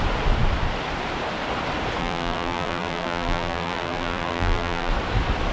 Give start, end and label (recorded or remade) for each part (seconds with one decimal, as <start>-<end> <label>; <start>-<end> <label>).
0.0-2.0 recorded; 2.0-4.9 remade; 4.9-5.5 recorded